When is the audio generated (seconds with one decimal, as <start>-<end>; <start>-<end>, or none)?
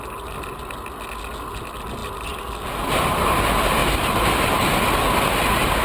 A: none